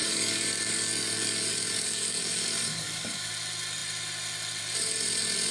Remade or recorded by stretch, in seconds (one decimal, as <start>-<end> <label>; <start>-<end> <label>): 0.0-3.3 remade; 3.3-5.5 recorded